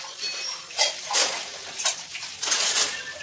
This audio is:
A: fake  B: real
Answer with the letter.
B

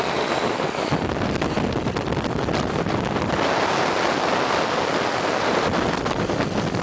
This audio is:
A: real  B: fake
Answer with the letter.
A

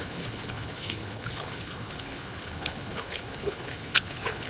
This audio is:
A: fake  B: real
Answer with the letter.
A